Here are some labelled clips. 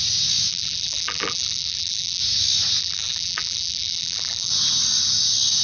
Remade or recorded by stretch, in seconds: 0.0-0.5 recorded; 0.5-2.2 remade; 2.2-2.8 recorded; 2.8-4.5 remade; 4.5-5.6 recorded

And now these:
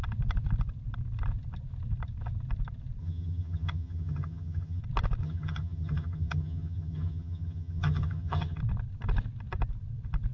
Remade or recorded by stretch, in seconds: 0.0-3.0 recorded; 3.0-4.8 remade; 4.8-5.2 recorded; 5.2-8.6 remade; 8.6-10.3 recorded

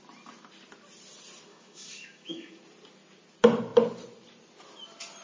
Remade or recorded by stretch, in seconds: 0.0-1.5 recorded; 1.5-2.6 remade; 2.6-5.2 recorded

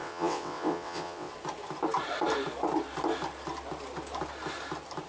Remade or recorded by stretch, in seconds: 0.0-1.3 remade; 1.3-5.1 recorded

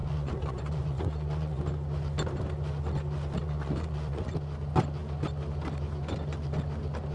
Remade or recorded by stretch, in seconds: 0.0-1.6 remade; 1.6-3.4 recorded; 3.4-4.3 remade; 4.3-7.1 recorded